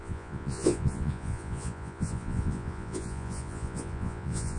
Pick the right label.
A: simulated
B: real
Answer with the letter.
A